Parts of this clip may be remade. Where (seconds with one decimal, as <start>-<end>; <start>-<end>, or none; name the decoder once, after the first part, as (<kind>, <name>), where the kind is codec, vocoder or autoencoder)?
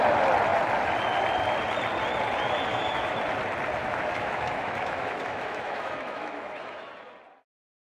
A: 2.7-3.2 (autoencoder, DAC-VAE); 3.8-6.9